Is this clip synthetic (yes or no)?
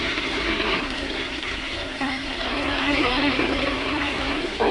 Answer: yes